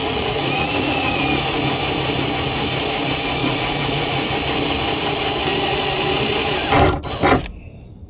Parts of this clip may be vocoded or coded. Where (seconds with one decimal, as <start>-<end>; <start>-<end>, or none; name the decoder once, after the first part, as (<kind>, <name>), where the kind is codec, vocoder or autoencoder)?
0.0-1.2 (vocoder, Vocos); 3.4-4.3